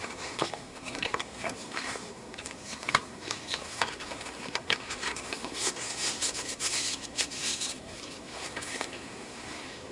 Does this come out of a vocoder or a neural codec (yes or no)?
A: yes